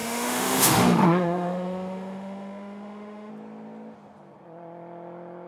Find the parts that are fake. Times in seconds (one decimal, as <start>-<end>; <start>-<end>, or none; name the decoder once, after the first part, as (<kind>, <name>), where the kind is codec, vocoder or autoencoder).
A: 0.0-3.3 (autoencoder, DAC-VAE)

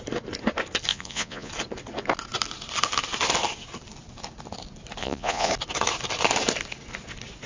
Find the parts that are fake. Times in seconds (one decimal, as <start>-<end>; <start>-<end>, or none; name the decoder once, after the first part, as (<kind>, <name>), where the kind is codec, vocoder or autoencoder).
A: 0.9-1.5 (vocoder, Vocos); 5.0-5.5

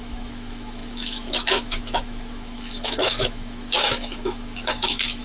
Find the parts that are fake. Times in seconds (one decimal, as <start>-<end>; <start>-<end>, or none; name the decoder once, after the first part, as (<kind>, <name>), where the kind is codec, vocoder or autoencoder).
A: 0.0-5.2 (autoencoder, DAC-VAE)

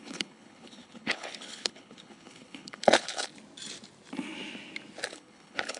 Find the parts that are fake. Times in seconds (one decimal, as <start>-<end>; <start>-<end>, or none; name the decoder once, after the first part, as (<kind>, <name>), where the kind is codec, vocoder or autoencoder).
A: 0.0-3.3 (codec, HILCodec); 5.1-5.8